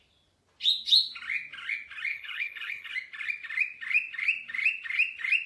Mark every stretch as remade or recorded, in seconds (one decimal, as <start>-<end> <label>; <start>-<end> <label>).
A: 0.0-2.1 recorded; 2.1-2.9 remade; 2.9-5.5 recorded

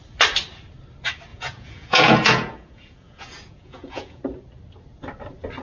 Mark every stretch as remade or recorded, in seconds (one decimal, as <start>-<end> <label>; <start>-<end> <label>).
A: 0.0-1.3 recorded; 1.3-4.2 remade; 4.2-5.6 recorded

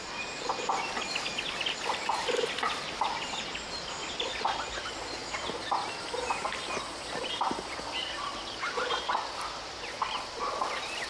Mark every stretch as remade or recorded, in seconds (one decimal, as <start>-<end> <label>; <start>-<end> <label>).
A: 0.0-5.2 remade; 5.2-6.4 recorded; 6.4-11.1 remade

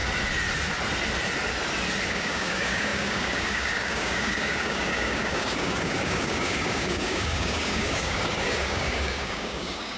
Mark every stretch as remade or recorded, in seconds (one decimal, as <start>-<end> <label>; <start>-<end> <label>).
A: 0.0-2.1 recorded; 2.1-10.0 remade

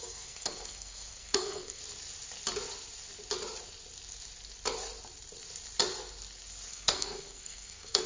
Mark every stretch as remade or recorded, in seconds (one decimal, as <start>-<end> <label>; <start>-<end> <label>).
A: 0.0-1.8 remade; 1.8-6.7 recorded; 6.7-8.1 remade

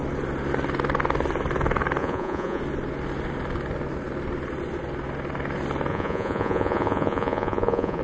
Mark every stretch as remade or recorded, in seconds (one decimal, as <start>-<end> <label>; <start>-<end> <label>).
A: 0.0-2.0 recorded; 2.0-2.6 remade; 2.6-5.9 recorded; 5.9-8.0 remade

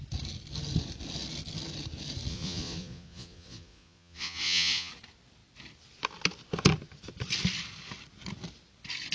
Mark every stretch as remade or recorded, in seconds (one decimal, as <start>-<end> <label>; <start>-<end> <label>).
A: 0.0-2.3 recorded; 2.3-4.9 remade; 4.9-9.1 recorded

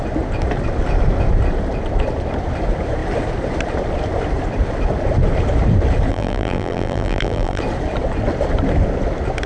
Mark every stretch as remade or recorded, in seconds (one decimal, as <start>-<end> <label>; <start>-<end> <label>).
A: 0.0-6.1 recorded; 6.1-7.6 remade; 7.6-9.5 recorded